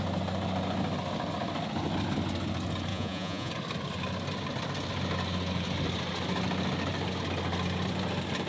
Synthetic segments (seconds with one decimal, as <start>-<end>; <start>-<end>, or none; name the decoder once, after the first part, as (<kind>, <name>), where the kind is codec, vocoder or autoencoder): 2.9-3.5 (vocoder, Vocos)